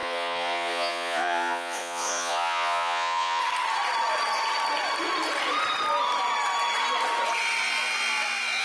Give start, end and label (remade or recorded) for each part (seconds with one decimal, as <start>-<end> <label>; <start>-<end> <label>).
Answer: 0.0-3.4 remade; 3.4-8.6 recorded